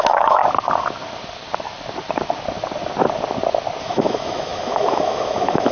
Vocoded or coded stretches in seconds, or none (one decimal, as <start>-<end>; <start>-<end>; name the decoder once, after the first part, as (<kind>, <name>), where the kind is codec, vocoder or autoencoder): 0.0-0.4 (autoencoder, DAC-VAE); 3.8-5.7